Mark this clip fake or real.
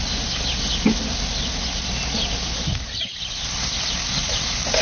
real